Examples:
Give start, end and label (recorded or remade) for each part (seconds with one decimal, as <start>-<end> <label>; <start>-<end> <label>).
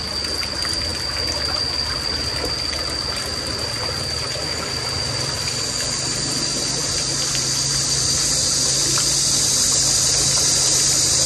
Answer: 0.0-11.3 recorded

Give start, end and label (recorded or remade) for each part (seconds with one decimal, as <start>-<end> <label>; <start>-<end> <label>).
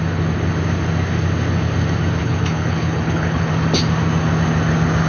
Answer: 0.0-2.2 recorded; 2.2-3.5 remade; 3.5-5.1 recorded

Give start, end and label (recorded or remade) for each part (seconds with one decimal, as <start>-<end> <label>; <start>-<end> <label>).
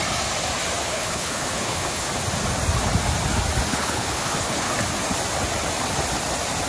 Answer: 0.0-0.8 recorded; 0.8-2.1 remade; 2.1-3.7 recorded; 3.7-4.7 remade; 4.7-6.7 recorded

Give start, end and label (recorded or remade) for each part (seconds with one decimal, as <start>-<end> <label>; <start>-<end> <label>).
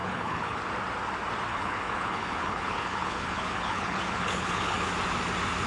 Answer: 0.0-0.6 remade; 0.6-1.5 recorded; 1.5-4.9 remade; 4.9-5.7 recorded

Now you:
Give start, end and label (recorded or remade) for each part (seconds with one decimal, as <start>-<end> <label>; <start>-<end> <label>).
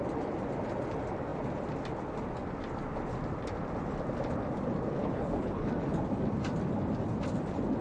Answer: 0.0-5.0 recorded; 5.0-5.7 remade; 5.7-7.8 recorded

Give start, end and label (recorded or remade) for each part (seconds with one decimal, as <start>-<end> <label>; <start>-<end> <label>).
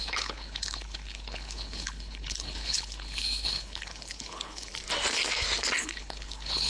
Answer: 0.0-4.7 remade; 4.7-5.8 recorded; 5.8-6.7 remade